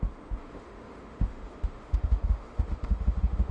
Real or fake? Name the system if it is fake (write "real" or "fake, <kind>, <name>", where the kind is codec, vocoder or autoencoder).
fake, autoencoder, DAC-VAE